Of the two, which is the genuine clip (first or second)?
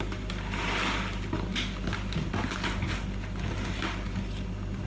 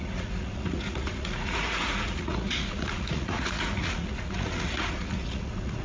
first